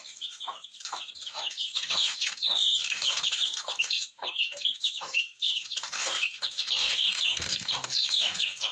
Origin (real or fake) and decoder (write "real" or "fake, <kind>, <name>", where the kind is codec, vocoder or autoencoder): fake, codec, DAC